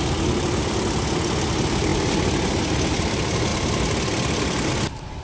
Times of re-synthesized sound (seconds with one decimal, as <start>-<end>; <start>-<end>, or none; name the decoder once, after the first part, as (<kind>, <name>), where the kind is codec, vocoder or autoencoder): none